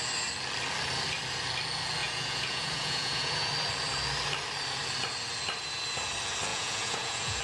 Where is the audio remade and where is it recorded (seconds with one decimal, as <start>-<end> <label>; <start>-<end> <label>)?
0.0-2.0 recorded; 2.0-3.5 remade; 3.5-6.5 recorded; 6.5-7.4 remade